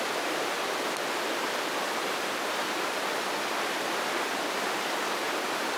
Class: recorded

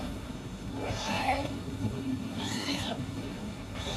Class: remade